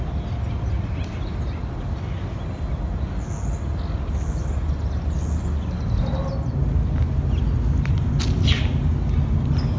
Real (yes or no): yes